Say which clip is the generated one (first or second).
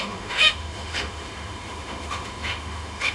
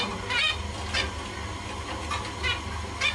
first